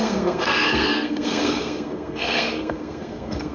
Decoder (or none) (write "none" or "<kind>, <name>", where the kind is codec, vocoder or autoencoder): codec, SNAC